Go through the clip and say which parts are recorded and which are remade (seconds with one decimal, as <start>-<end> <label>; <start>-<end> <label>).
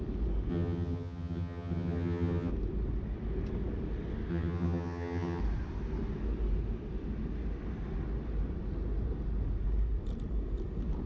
0.0-0.5 recorded; 0.5-2.5 remade; 2.5-4.3 recorded; 4.3-5.4 remade; 5.4-11.1 recorded